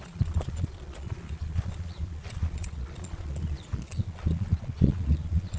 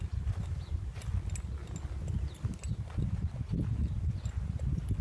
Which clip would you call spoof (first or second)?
first